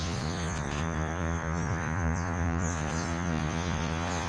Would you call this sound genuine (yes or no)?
no